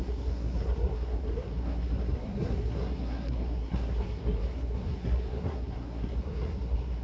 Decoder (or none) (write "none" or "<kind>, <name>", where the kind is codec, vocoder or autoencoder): codec, SNAC